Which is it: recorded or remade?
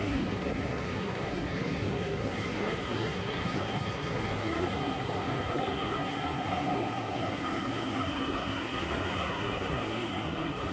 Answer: remade